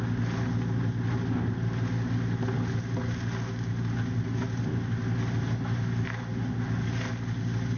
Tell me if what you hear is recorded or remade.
recorded